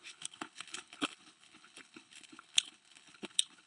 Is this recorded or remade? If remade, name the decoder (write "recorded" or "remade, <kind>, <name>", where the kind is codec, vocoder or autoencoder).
remade, codec, HILCodec